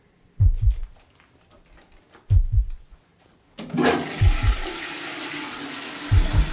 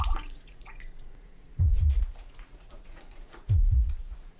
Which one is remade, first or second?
second